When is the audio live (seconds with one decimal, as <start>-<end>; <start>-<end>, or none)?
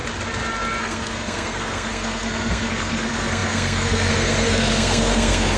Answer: 0.0-0.8